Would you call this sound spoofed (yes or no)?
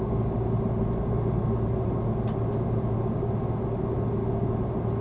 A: no